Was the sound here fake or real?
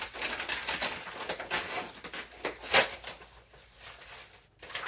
real